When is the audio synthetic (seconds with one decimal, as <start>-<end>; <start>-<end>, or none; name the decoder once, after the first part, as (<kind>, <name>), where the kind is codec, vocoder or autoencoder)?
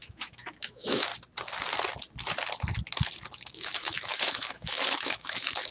0.0-1.1 (autoencoder, DAC-VAE); 3.5-5.7